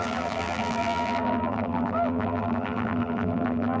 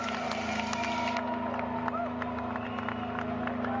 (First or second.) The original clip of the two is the second